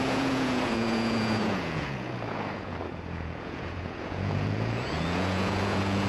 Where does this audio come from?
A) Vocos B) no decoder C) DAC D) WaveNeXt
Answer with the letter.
A